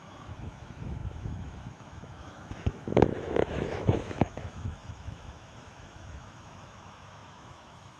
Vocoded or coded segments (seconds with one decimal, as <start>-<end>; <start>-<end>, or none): 0.0-8.0